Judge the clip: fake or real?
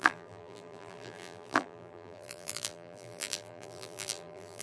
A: fake